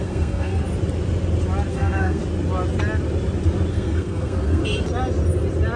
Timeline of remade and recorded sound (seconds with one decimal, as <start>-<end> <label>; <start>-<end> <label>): 0.0-0.6 remade; 0.6-1.7 recorded; 1.7-2.2 remade; 2.2-3.7 recorded; 3.7-4.6 remade; 4.6-5.8 recorded